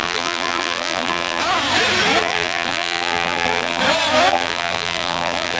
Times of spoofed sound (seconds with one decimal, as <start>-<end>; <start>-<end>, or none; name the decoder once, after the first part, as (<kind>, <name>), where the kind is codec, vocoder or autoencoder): 0.0-1.4 (vocoder, BigVGAN v2); 2.2-3.8; 4.3-5.6

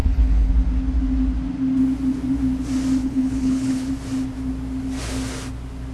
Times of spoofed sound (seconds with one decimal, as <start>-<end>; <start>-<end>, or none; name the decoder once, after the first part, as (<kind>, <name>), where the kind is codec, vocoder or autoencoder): 0.0-0.5 (codec, HILCodec); 3.0-3.9

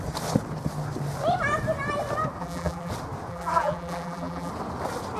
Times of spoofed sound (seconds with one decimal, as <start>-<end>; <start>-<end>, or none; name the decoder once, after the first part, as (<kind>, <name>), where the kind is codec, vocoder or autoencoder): 2.4-2.9 (vocoder, BigVGAN v2); 3.3-4.5

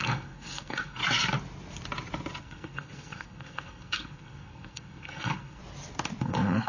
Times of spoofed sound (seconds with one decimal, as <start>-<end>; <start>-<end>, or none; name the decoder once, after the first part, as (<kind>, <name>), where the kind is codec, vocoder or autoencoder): 0.0-1.0 (codec, SNAC); 2.4-5.6; 6.2-6.7

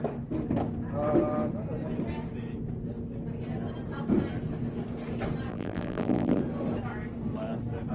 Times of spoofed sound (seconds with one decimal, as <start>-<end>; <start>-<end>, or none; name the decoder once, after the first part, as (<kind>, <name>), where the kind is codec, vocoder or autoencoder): 5.5-6.4 (vocoder, BigVGAN v2)

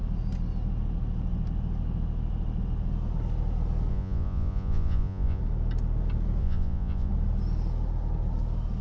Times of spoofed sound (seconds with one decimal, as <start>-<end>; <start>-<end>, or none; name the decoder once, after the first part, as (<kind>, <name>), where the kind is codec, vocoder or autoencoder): 3.9-5.4 (vocoder, Vocos); 6.4-7.1

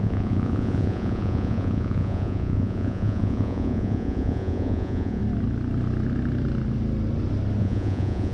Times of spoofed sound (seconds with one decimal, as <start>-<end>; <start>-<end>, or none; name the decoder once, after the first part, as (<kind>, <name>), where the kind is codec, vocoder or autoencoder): 0.0-5.2 (vocoder, Vocos); 7.6-8.3

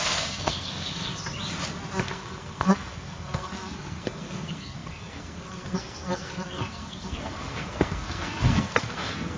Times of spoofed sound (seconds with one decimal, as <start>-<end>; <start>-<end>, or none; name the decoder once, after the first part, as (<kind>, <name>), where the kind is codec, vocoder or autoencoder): 0.0-1.1 (codec, SNAC); 2.0-9.4